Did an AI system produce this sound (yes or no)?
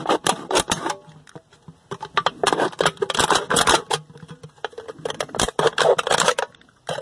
no